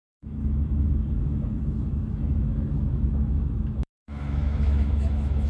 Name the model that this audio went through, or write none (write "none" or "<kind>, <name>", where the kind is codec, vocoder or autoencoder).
autoencoder, DAC-VAE